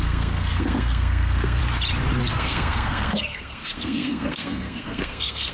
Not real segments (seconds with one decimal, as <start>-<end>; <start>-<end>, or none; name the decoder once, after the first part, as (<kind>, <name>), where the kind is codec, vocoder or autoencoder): 0.0-1.6 (codec, SNAC); 2.2-5.5